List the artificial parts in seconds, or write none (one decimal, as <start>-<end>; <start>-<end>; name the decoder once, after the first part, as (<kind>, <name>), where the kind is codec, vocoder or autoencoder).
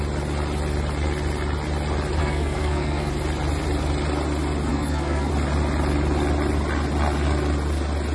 2.2-3.1 (codec, SNAC); 4.7-5.3